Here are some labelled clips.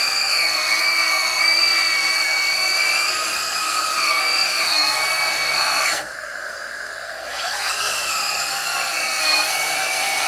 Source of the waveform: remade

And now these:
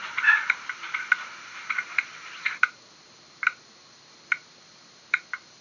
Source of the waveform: remade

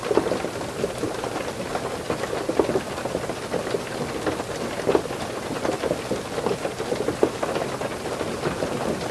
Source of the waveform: recorded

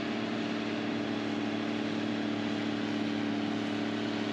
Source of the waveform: recorded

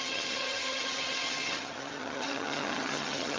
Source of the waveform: remade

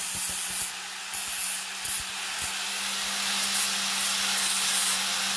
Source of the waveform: recorded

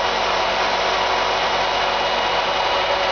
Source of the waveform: recorded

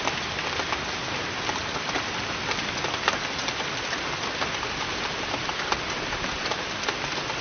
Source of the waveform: recorded